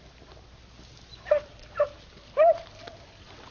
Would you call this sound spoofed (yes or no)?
no